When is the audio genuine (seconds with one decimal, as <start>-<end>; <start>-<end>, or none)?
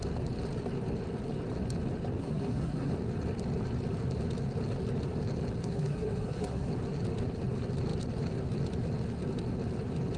0.0-2.2; 2.9-5.6; 6.7-10.2